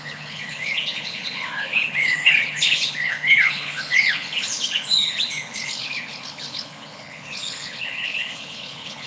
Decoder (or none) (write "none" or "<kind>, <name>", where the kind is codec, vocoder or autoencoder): codec, HILCodec